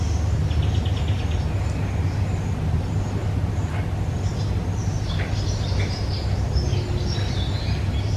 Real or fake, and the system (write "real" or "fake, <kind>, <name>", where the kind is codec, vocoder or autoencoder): real